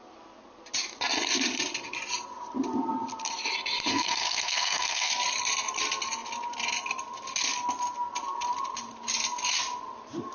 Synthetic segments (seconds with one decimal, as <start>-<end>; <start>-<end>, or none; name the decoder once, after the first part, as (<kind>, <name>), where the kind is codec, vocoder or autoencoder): 3.9-5.1 (codec, SNAC)